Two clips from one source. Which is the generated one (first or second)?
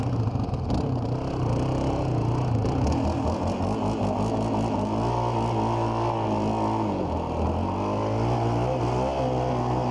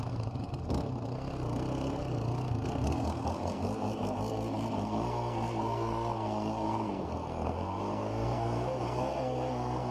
second